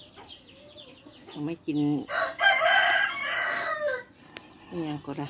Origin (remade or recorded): recorded